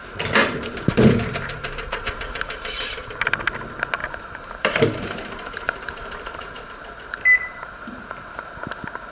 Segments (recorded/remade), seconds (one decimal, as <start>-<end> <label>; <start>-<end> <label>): 0.0-0.4 recorded; 0.4-3.1 remade; 3.1-4.0 recorded; 4.0-8.4 remade; 8.4-9.1 recorded